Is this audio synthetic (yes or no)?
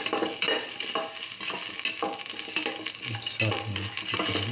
no